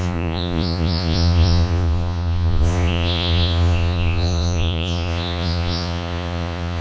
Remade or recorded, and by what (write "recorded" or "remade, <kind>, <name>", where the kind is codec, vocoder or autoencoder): remade, vocoder, Vocos